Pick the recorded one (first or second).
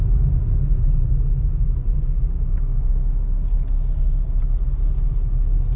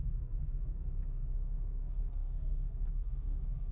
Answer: first